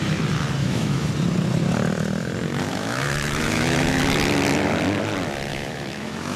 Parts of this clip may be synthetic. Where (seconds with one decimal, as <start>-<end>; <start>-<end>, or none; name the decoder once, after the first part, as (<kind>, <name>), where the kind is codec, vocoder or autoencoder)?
0.6-1.1 (autoencoder, DAC-VAE); 2.7-4.0; 5.5-6.4